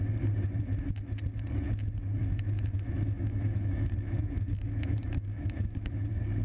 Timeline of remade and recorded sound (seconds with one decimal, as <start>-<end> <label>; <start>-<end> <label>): 0.0-2.2 recorded; 2.2-6.0 remade; 6.0-6.4 recorded